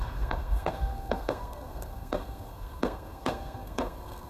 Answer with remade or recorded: remade